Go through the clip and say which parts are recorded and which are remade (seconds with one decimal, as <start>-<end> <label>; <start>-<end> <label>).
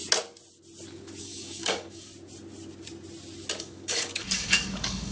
0.0-1.2 recorded; 1.2-2.1 remade; 2.1-3.6 recorded; 3.6-5.1 remade